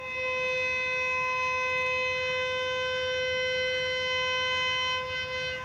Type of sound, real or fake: real